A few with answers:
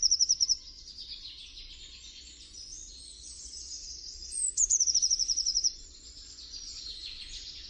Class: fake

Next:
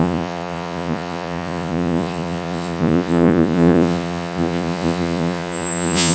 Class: fake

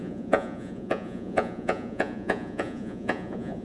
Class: fake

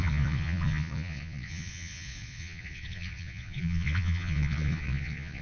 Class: fake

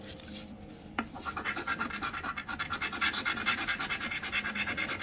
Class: real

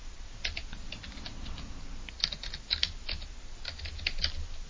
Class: real